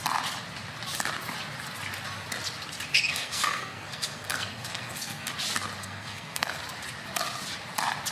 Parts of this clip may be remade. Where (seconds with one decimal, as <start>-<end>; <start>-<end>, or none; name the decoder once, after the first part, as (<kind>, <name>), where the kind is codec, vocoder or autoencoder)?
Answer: 2.9-5.3 (codec, SNAC); 5.8-6.6